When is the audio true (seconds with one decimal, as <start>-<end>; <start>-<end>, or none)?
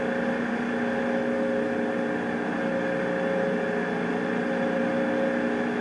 0.0-5.8